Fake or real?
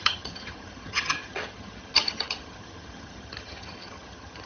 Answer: fake